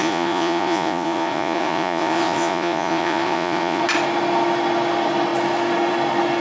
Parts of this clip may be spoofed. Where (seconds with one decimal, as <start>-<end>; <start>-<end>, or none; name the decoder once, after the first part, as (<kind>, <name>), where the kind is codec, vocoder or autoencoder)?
0.0-3.8 (vocoder, Vocos)